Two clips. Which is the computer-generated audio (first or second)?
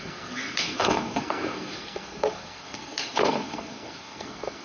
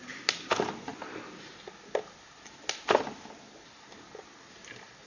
first